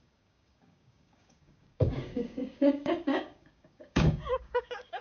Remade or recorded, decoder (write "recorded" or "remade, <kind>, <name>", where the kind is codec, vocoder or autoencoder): remade, codec, DAC